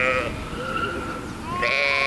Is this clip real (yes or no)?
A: yes